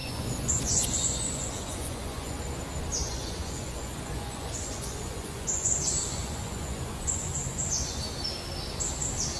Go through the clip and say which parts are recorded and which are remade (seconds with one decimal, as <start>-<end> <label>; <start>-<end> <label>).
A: 0.0-2.4 remade; 2.4-3.0 recorded; 3.0-8.0 remade; 8.0-9.4 recorded